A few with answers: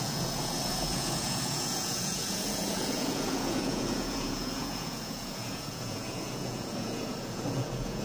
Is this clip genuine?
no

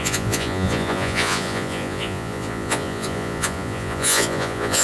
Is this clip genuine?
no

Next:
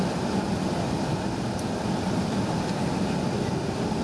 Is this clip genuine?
yes